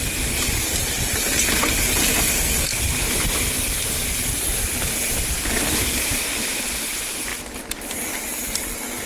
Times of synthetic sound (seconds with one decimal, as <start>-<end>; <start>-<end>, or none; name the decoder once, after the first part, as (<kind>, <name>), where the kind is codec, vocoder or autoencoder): 2.0-2.8 (codec, SNAC)